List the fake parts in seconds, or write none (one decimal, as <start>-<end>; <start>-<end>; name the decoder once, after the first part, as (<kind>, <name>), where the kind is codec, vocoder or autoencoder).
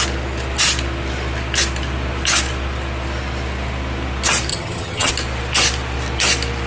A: 4.5-5.1 (vocoder, HiFi-GAN)